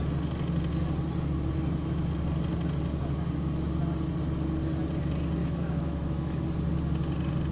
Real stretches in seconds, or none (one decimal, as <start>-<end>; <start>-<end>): 0.0-5.4; 6.4-7.5